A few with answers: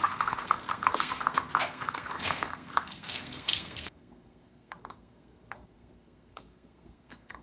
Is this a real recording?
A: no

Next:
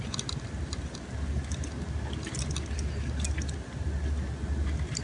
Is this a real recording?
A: yes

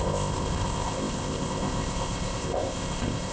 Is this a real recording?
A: no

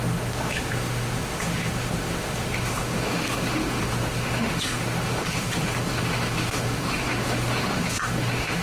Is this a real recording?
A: no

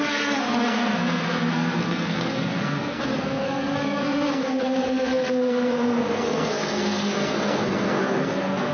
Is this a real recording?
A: no